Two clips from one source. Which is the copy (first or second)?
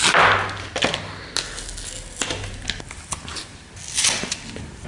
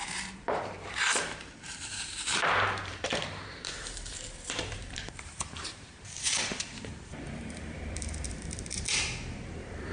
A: second